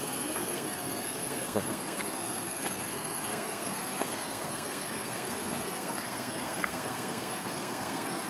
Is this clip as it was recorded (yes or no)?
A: no